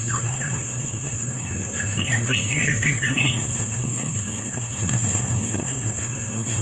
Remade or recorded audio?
remade